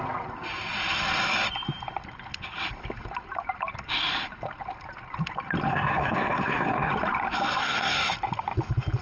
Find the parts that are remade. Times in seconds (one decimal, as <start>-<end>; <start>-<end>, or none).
5.7-6.9; 7.6-8.1